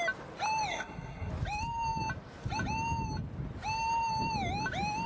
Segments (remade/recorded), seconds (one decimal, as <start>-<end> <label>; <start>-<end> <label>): 0.0-0.7 recorded; 0.7-1.3 remade; 1.3-5.1 recorded